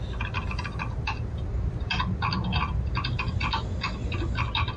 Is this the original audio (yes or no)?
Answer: yes